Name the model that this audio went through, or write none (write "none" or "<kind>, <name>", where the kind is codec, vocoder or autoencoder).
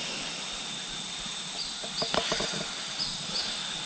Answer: none